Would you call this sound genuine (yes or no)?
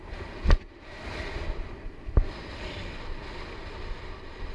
yes